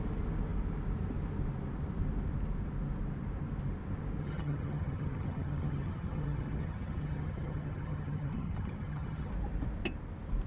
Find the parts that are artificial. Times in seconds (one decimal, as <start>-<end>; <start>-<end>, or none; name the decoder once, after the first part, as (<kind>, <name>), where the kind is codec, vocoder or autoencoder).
4.2-9.3 (vocoder, HiFi-GAN)